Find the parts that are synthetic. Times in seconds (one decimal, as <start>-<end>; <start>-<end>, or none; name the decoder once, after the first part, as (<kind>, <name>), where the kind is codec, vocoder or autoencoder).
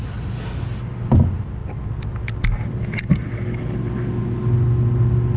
none